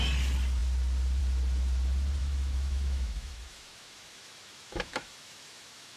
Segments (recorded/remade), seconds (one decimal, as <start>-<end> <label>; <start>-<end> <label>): 0.0-2.2 recorded; 2.2-6.0 remade